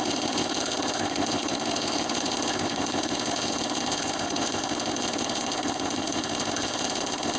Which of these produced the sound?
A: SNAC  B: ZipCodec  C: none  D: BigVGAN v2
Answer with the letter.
B